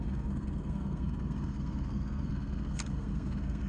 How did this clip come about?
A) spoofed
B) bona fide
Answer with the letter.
A